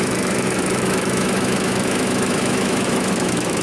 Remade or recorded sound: remade